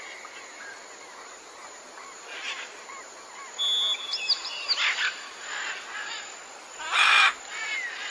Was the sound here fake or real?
real